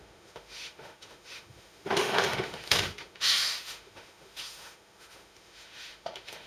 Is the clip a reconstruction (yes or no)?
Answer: yes